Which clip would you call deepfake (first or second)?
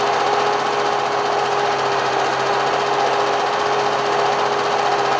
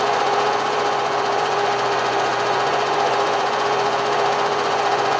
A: second